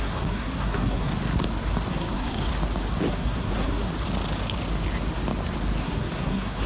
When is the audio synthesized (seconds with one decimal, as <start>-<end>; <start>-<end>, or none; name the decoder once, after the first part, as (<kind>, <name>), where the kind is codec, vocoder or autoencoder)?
0.0-1.1 (codec, SNAC); 1.9-2.5; 3.1-3.9; 5.8-6.7